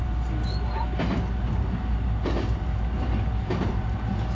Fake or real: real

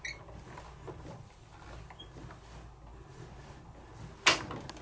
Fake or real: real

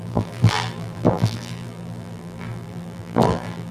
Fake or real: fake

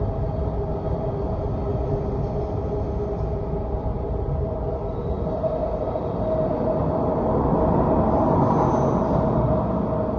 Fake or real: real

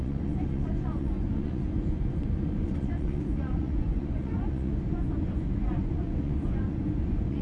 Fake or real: fake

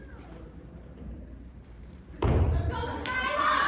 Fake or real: fake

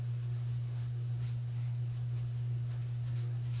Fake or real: fake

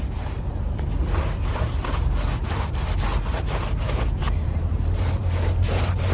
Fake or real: real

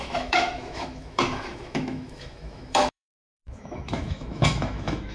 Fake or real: fake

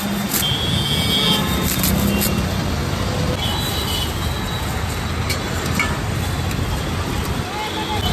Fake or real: real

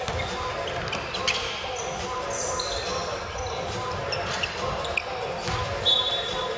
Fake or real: real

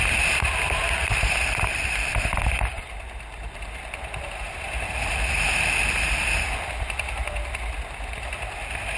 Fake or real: real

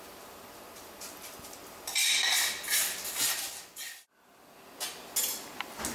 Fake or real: real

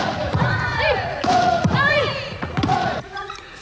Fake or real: fake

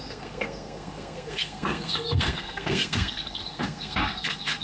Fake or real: fake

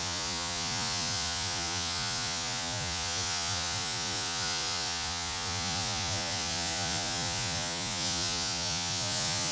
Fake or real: fake